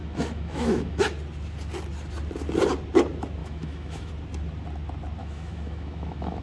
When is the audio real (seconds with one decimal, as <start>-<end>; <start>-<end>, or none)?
1.0-3.4; 4.1-5.2